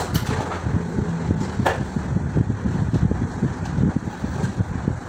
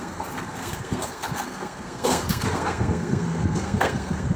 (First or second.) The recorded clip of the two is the first